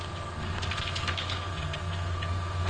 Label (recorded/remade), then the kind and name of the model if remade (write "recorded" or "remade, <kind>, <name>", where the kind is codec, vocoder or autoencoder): remade, codec, SNAC